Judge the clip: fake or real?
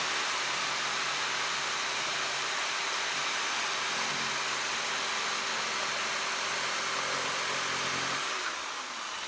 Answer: real